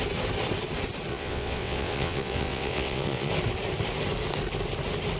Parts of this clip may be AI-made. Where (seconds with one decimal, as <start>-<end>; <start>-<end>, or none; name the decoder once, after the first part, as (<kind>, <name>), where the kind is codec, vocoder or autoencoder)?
1.1-3.3 (vocoder, WaveNeXt)